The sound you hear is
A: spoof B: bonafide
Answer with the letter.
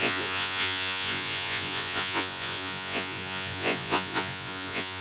A